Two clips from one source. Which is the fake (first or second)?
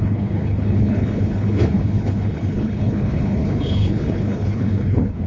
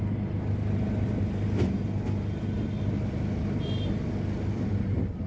first